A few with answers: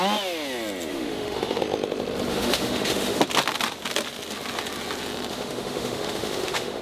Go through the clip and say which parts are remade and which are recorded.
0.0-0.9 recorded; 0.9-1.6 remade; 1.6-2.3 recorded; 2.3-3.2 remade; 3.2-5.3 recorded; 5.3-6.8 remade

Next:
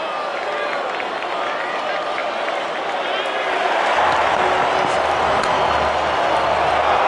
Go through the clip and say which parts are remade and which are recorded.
0.0-7.1 recorded

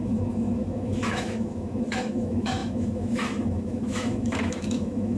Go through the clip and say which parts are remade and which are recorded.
0.0-5.2 remade

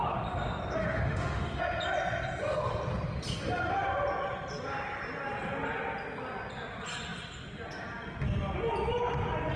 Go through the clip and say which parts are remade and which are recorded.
0.0-0.8 recorded; 0.8-1.6 remade; 1.6-9.6 recorded

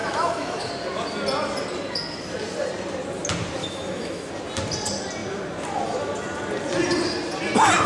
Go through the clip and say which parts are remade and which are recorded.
0.0-0.7 remade; 0.7-3.6 recorded; 3.6-4.3 remade; 4.3-7.9 recorded

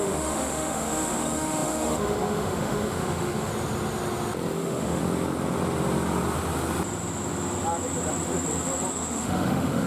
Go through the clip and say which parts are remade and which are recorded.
0.0-3.5 remade; 3.5-4.5 recorded; 4.5-5.0 remade; 5.0-8.9 recorded; 8.9-9.9 remade